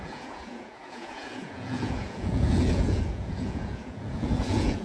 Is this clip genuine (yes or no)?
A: no